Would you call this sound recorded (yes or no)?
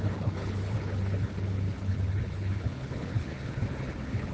no